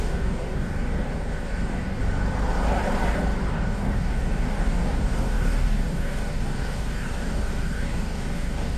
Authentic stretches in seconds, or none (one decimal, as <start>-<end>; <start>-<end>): 2.0-3.5